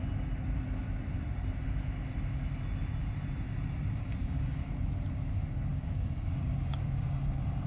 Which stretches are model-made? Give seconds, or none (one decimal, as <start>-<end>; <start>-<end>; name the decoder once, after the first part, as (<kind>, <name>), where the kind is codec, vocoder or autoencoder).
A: 4.2-4.8 (codec, DAC); 5.7-7.7